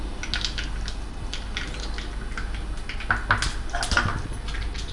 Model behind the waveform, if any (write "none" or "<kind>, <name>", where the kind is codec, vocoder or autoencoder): none